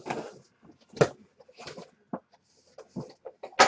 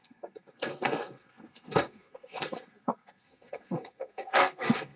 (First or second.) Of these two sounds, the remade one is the second